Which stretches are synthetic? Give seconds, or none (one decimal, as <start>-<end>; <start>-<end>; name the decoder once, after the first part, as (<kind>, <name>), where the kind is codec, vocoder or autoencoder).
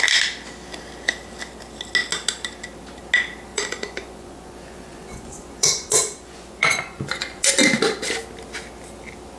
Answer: 3.5-7.5 (vocoder, Vocos)